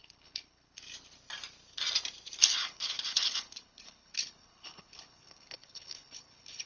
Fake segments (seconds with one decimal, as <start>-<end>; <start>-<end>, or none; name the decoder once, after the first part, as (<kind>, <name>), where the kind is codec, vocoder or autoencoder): 0.0-0.8 (codec, HILCodec); 2.6-6.7